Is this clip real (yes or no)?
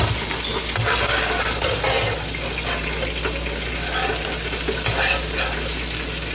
yes